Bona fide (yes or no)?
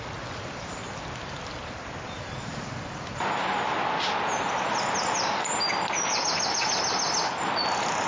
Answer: yes